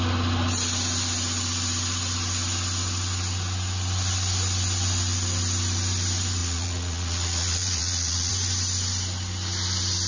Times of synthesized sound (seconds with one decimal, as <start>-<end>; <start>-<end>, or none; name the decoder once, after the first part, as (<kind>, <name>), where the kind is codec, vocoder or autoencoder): 6.4-8.3 (vocoder, Vocos)